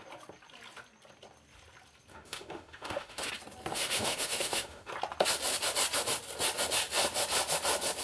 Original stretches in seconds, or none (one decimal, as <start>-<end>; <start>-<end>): 0.0-2.1; 3.3-3.7; 4.9-8.0